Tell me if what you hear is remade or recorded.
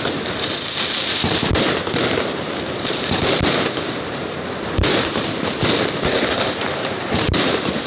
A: remade